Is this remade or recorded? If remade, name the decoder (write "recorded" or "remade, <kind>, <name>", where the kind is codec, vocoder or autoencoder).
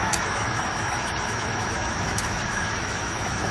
remade, autoencoder, DAC-VAE